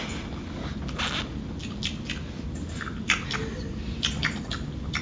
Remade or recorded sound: recorded